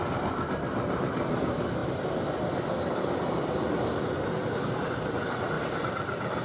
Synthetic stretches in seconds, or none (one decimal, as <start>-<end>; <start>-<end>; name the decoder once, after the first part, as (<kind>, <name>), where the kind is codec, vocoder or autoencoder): none